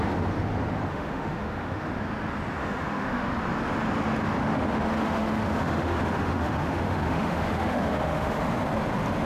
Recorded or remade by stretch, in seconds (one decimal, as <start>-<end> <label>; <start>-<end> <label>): 0.0-0.9 recorded; 0.9-1.9 remade; 1.9-2.6 recorded; 2.6-3.3 remade; 3.3-4.4 recorded; 4.4-8.4 remade; 8.4-9.3 recorded